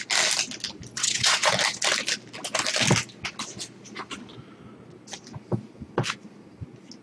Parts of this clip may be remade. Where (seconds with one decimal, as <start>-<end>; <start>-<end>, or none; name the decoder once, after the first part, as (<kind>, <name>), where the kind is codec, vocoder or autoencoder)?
0.9-1.5 (vocoder, WaveNeXt)